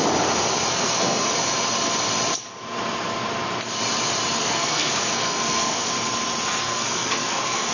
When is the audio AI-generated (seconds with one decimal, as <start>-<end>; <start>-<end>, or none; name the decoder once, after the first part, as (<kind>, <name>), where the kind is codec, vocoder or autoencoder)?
0.7-1.3 (codec, SNAC); 4.4-5.9; 6.6-7.7